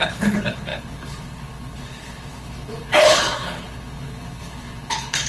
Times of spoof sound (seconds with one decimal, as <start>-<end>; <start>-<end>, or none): 0.0-5.3